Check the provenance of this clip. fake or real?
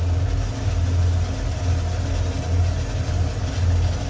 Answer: real